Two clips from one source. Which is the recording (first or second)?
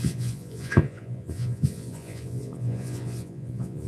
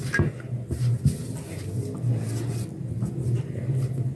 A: second